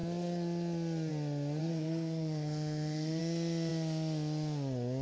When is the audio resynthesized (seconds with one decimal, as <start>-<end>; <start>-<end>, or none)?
1.6-3.2